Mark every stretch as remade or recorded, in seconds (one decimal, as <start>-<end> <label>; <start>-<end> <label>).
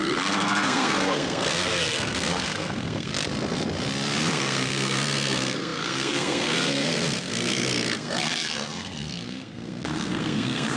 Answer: 0.0-3.1 remade; 3.1-4.3 recorded; 4.3-10.8 remade